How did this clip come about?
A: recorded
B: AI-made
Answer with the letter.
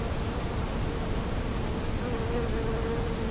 A